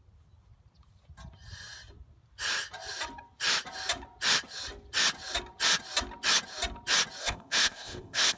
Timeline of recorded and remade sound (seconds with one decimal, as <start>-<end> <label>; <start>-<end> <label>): 0.0-7.2 recorded; 7.2-8.4 remade